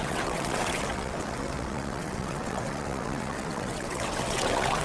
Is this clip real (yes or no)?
no